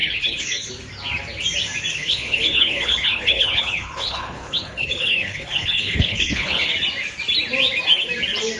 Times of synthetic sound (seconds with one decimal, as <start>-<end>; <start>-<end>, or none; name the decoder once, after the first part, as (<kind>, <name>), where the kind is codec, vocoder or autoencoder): 0.0-0.7 (codec, HILCodec); 1.9-6.7